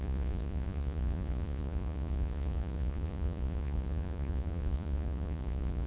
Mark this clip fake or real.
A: fake